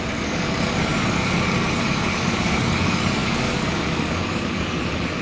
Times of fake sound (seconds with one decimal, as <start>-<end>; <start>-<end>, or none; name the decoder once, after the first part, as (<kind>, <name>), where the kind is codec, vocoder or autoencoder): 0.0-5.2 (codec, DAC)